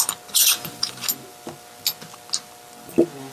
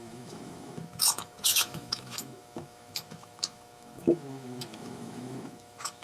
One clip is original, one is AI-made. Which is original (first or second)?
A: first